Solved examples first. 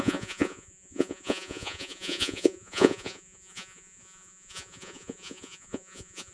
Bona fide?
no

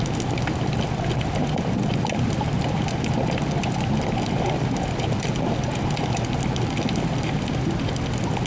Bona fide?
yes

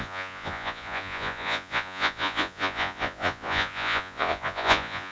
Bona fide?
no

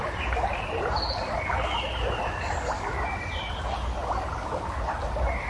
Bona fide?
yes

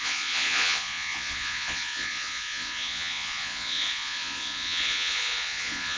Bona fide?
no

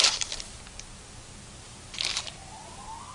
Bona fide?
yes